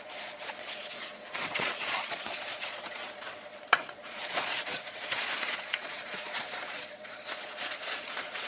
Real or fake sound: fake